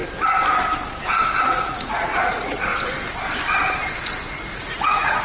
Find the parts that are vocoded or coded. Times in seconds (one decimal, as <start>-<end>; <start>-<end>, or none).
1.4-2.7; 4.3-5.2